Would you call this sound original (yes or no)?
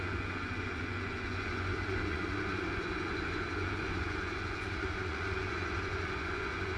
no